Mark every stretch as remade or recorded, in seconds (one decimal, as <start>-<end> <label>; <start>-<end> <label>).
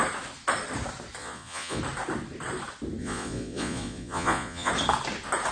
0.0-1.2 recorded; 1.2-1.8 remade; 1.8-3.0 recorded; 3.0-4.7 remade; 4.7-5.5 recorded